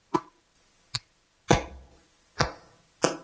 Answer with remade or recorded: recorded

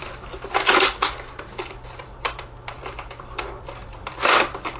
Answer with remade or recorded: remade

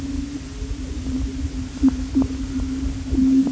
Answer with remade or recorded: recorded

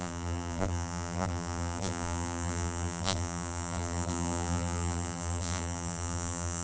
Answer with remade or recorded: remade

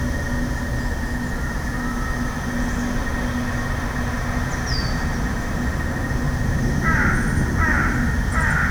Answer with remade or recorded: recorded